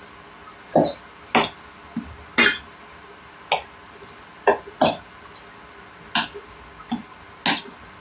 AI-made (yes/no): no